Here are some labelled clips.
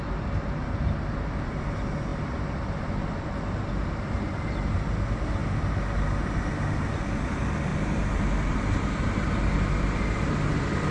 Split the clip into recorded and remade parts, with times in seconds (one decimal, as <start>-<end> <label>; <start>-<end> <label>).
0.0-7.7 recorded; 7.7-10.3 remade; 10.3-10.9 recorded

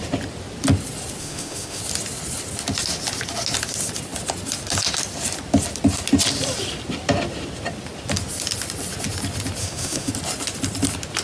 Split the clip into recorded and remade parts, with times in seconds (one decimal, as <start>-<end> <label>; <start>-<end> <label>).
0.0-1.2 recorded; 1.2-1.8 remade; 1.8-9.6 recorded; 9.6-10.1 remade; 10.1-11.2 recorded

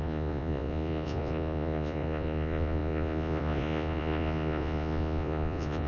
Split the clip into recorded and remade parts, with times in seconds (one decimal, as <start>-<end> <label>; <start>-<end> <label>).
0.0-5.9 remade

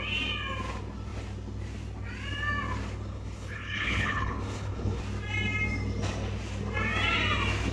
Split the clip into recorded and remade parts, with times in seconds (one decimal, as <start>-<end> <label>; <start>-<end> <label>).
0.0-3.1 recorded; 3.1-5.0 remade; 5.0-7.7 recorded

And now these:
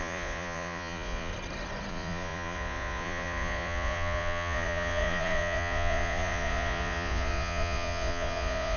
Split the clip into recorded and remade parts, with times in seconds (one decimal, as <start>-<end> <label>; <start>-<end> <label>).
0.0-1.3 remade; 1.3-1.9 recorded; 1.9-8.8 remade

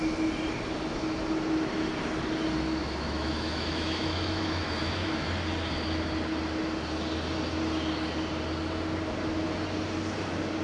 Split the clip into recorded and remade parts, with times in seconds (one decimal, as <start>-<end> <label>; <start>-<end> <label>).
0.0-2.8 recorded; 2.8-5.3 remade; 5.3-10.6 recorded